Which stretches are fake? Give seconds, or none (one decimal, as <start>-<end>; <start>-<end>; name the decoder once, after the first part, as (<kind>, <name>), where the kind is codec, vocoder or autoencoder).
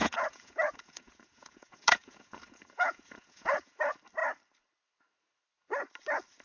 0.0-3.8 (vocoder, Vocos)